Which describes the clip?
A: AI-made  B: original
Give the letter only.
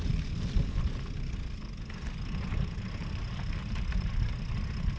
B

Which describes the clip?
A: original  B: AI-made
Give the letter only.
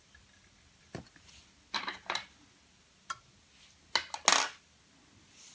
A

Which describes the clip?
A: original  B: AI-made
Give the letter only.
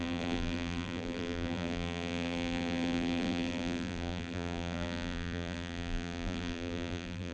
B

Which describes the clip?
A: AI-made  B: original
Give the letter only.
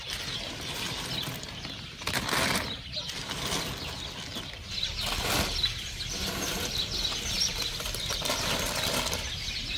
B